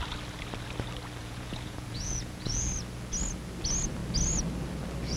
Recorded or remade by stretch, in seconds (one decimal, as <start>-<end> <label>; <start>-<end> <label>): 0.0-1.2 recorded; 1.2-2.7 remade; 2.7-5.2 recorded